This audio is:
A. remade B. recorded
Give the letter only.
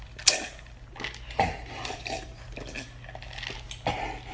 B